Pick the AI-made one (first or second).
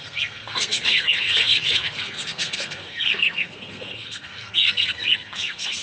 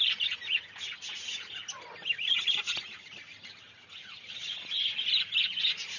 first